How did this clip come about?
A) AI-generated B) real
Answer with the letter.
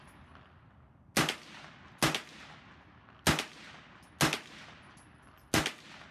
B